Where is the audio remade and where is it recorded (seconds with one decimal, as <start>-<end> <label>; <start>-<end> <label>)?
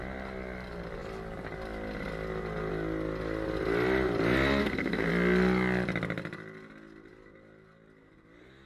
0.0-4.6 recorded; 4.6-5.1 remade; 5.1-8.7 recorded